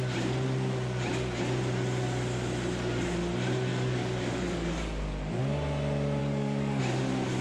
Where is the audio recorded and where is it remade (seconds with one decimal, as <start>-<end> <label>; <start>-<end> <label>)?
0.0-3.7 recorded; 3.7-5.4 remade; 5.4-6.2 recorded; 6.2-6.8 remade; 6.8-7.4 recorded